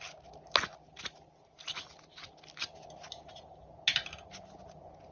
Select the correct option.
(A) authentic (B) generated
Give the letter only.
A